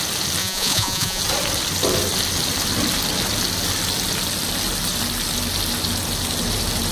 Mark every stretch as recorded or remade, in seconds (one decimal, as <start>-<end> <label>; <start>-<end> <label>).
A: 0.0-0.4 recorded; 0.4-1.2 remade; 1.2-6.9 recorded